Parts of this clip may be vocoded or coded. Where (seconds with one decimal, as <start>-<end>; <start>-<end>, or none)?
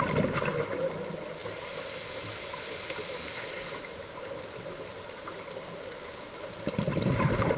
none